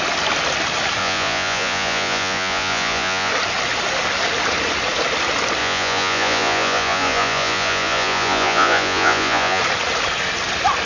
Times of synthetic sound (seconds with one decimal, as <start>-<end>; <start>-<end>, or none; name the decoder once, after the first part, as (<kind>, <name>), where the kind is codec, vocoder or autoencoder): 1.0-3.3 (vocoder, Vocos); 5.6-9.6